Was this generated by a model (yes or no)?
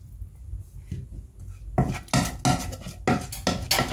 no